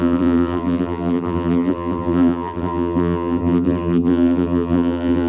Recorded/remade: remade